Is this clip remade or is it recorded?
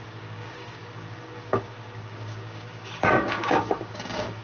remade